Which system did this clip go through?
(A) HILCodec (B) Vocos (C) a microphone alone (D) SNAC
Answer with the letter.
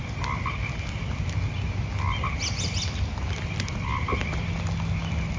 C